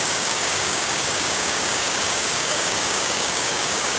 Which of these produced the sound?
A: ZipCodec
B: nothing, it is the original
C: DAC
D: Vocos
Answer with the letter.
C